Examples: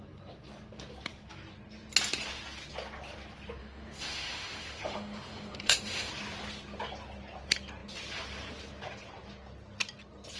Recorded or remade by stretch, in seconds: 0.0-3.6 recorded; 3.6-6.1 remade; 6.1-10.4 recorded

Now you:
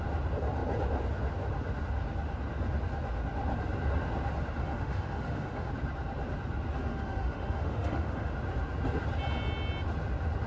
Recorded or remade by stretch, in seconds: 0.0-4.6 recorded; 4.6-5.7 remade; 5.7-6.9 recorded; 6.9-8.3 remade; 8.3-10.5 recorded

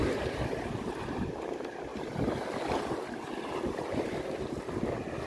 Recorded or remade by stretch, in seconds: 0.0-5.3 recorded

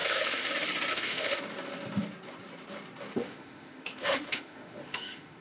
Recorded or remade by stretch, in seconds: 0.0-0.5 remade; 0.5-0.9 recorded; 0.9-1.4 remade; 1.4-3.1 recorded; 3.1-5.4 remade

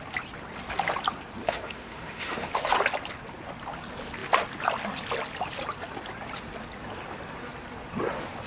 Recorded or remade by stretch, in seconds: 0.0-1.4 recorded; 1.4-2.5 remade; 2.5-8.5 recorded

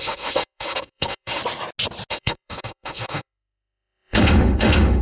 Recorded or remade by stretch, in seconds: 0.0-1.4 remade; 1.4-2.1 recorded; 2.1-5.0 remade

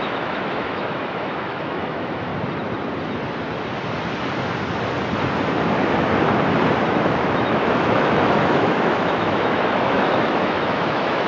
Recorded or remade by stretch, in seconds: 0.0-2.3 remade; 2.3-6.9 recorded; 6.9-11.3 remade